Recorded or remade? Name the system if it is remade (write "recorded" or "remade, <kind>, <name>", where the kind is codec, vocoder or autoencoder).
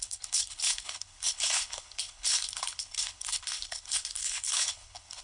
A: remade, codec, HILCodec